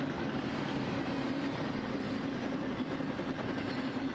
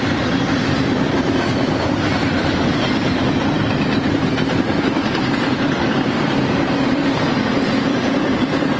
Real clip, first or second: first